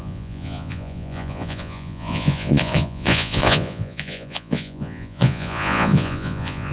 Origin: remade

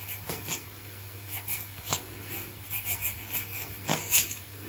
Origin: remade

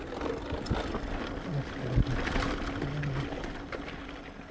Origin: recorded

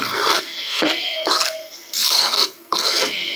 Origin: remade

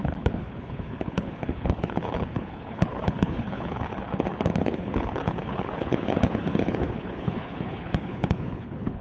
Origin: remade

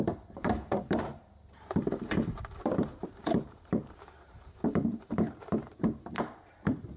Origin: remade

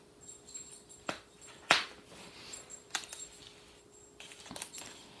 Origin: recorded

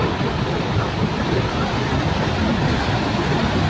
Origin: recorded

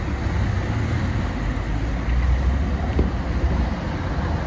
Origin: recorded